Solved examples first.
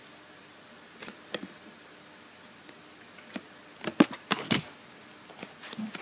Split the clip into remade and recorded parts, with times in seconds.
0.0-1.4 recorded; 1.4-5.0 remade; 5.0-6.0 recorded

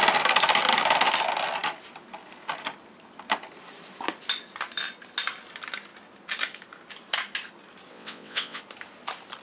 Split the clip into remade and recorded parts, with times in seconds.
0.0-7.9 recorded; 7.9-8.6 remade; 8.6-9.4 recorded